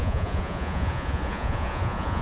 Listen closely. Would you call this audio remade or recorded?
remade